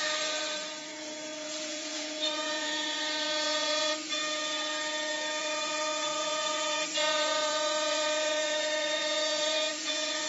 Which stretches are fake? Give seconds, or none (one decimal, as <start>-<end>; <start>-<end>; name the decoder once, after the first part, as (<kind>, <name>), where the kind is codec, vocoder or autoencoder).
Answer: 0.0-4.2 (vocoder, Vocos); 5.4-10.3